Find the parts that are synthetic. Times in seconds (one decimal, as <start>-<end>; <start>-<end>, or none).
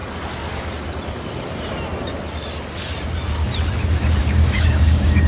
4.2-5.3